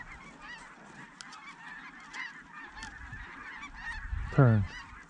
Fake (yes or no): no